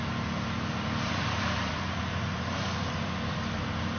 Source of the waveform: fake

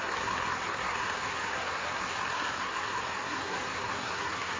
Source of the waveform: fake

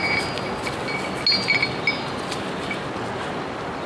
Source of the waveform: real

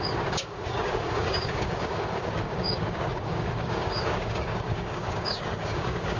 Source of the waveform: fake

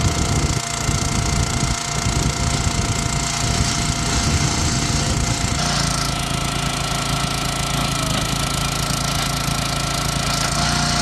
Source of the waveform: real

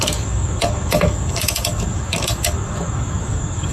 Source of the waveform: fake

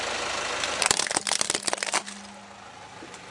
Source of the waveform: real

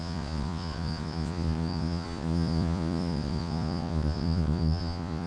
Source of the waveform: fake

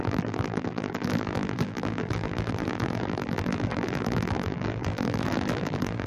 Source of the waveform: fake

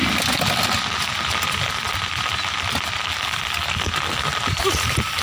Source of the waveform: real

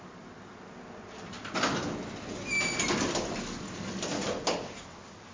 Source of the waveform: real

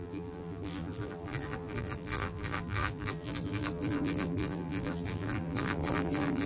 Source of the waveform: fake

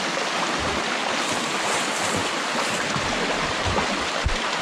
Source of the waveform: real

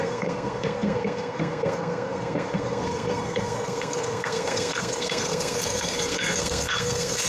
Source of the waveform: fake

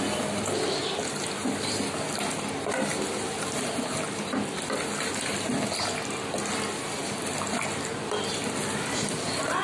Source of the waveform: real